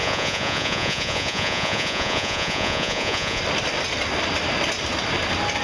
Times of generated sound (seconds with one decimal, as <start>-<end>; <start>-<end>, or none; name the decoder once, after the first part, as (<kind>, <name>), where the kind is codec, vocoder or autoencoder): 0.0-3.4 (vocoder, Vocos)